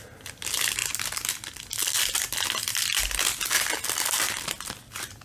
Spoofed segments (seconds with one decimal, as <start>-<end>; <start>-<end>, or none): none